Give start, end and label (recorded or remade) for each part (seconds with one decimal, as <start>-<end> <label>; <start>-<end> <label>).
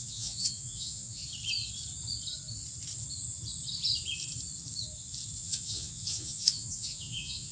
0.0-1.2 remade; 1.2-5.4 recorded; 5.4-7.5 remade